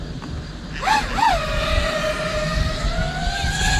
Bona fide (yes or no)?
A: yes